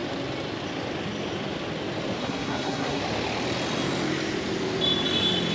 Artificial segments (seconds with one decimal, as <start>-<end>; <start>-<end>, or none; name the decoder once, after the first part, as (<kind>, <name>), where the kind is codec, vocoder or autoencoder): 2.2-3.0 (codec, SNAC)